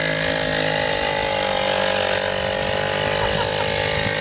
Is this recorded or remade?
recorded